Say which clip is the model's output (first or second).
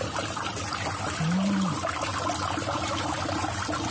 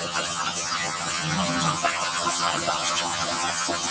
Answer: second